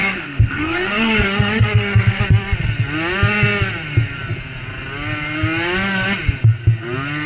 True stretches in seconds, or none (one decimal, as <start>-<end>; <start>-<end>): 2.2-7.3

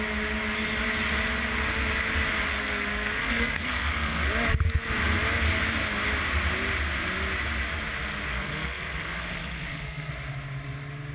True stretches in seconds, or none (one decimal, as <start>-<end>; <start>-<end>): 0.0-2.5; 4.3-8.3; 10.1-11.1